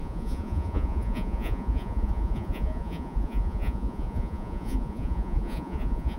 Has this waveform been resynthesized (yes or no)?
yes